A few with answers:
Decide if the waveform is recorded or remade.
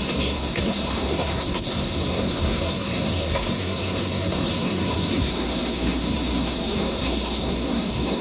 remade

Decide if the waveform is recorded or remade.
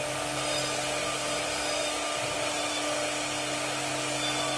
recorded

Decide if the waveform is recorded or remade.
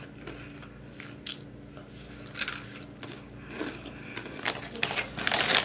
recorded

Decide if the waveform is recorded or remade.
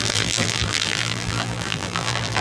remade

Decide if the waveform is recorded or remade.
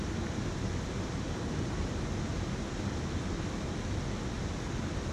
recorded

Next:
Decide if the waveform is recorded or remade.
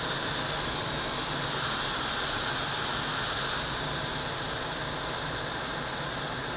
recorded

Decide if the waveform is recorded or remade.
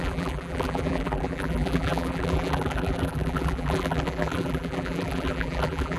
remade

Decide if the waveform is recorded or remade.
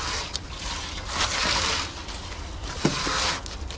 recorded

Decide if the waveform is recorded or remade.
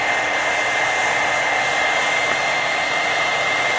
recorded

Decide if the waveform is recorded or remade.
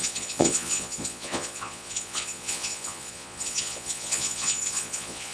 remade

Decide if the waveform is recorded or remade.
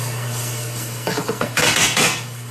remade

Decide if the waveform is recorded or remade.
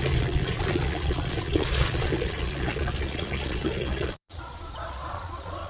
remade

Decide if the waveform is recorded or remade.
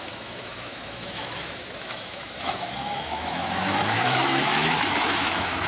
remade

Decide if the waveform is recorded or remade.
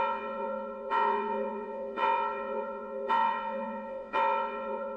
remade